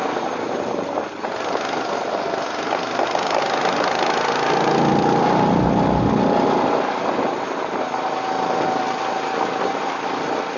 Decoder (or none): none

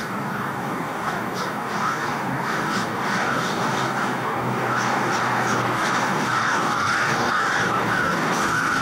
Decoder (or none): codec, DAC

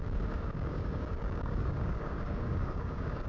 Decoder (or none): codec, DAC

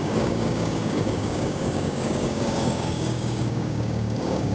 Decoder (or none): codec, DAC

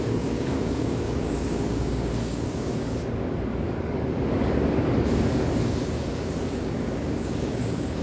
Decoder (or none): codec, DAC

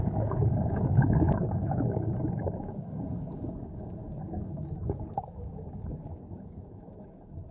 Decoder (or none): codec, DAC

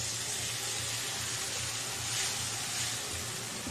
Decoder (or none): none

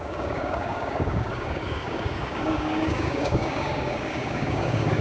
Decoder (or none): codec, DAC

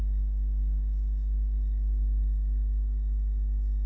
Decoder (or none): codec, DAC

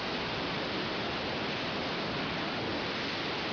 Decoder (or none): none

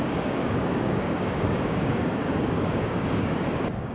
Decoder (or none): codec, DAC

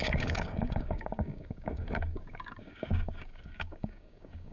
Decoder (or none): codec, DAC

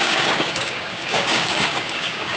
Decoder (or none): codec, DAC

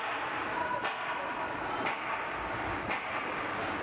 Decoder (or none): none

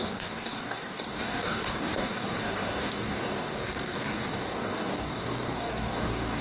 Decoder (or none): codec, DAC